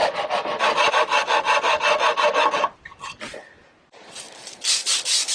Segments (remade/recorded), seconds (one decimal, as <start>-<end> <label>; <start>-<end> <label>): 0.0-5.3 recorded